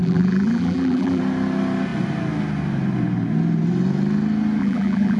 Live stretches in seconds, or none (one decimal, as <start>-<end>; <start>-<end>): 1.2-4.6